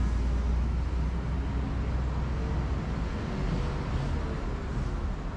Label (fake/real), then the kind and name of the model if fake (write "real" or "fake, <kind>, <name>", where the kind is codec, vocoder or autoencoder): real